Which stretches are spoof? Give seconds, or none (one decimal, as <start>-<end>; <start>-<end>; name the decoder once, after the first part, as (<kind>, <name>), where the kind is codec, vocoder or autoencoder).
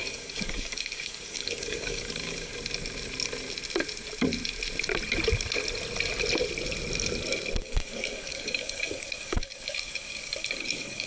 0.0-2.5 (codec, DAC); 7.6-11.1